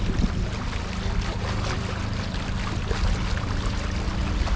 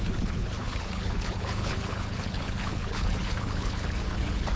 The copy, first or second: second